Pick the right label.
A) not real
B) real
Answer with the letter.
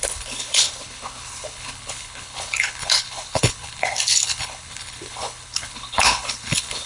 A